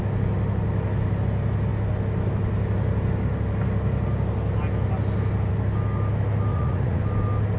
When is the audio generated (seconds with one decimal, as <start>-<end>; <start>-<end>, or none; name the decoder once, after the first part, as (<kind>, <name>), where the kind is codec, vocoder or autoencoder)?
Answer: 6.5-7.0 (vocoder, Vocos)